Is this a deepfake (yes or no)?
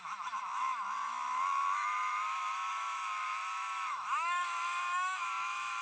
yes